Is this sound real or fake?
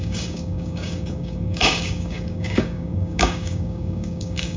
fake